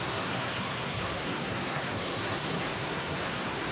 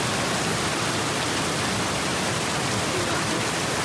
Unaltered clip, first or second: second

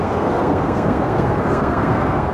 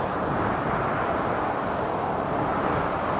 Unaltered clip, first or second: second